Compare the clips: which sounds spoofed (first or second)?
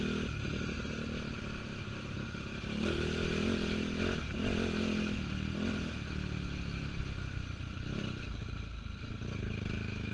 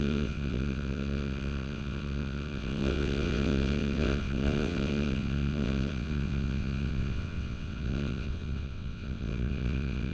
second